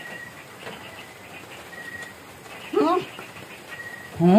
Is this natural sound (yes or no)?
yes